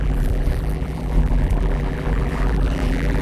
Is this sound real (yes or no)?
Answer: no